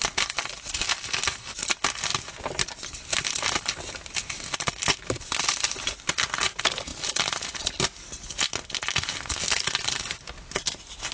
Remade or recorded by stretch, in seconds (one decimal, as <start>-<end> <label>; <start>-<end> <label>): 0.0-11.1 recorded